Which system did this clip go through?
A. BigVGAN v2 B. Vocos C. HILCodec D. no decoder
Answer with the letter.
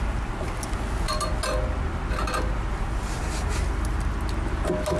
D